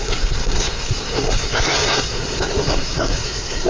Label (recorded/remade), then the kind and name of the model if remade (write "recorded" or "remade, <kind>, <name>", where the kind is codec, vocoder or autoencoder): remade, codec, SNAC